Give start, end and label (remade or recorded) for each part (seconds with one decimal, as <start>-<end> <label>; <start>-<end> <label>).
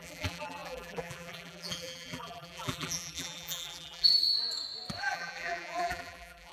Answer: 0.0-4.1 remade; 4.1-5.0 recorded; 5.0-6.5 remade